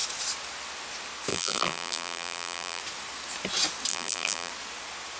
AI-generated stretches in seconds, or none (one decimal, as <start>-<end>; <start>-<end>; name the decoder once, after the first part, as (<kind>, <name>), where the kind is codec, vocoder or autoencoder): 1.3-2.8 (vocoder, BigVGAN v2); 3.9-4.5